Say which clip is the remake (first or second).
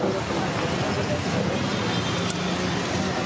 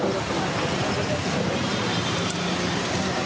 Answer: second